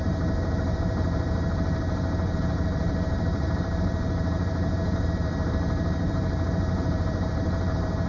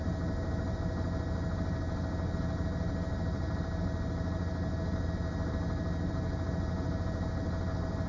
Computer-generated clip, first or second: first